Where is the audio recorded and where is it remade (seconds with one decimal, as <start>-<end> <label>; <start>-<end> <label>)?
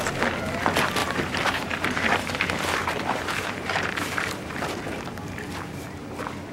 0.0-1.0 recorded; 1.0-4.5 remade; 4.5-6.5 recorded